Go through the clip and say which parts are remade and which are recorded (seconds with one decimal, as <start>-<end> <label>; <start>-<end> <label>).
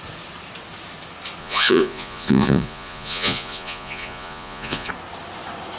0.0-1.4 recorded; 1.4-4.9 remade; 4.9-5.8 recorded